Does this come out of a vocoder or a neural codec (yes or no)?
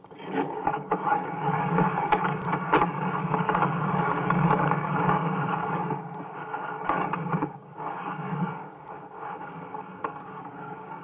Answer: yes